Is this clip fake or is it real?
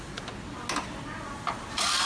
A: real